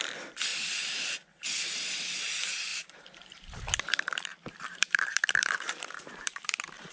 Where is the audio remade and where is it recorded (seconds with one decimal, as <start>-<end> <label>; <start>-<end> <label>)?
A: 0.0-2.7 recorded; 2.7-6.9 remade